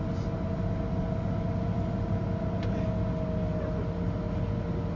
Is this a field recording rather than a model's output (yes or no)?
yes